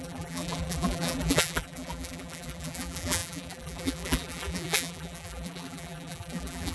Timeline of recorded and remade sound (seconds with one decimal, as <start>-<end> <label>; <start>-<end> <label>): 0.0-6.7 remade